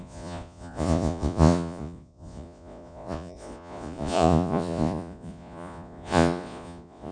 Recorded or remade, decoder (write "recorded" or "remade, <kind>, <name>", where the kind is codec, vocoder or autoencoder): remade, vocoder, Vocos